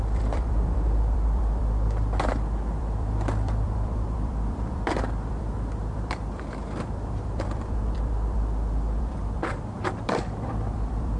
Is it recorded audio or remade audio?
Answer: remade